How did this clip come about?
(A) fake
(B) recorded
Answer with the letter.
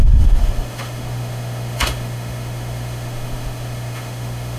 A